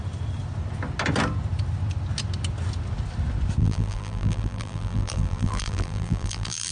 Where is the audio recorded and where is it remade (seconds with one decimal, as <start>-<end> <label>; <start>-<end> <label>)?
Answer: 0.0-3.6 recorded; 3.6-6.7 remade